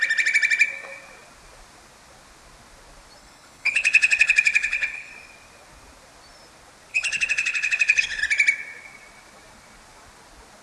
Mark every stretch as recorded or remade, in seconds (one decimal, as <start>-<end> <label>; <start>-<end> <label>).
0.0-3.2 recorded; 3.2-5.1 remade; 5.1-6.9 recorded; 6.9-8.2 remade; 8.2-10.6 recorded